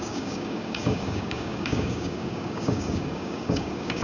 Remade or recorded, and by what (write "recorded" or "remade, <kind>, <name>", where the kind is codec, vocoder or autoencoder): remade, codec, DAC